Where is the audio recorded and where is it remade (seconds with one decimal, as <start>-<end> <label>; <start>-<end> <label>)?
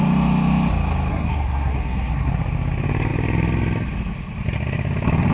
0.0-1.1 recorded; 1.1-2.3 remade; 2.3-5.3 recorded